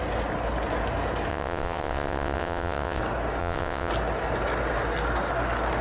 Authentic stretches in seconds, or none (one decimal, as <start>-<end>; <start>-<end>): 0.0-1.3; 3.0-3.4; 3.9-5.8